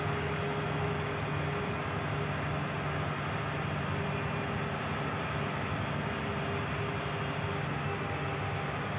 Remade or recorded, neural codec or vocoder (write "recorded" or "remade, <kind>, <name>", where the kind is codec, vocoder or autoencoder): recorded